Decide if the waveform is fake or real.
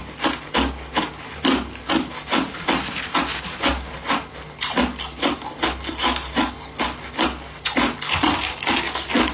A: real